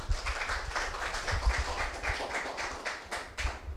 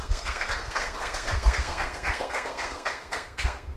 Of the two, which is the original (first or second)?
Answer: first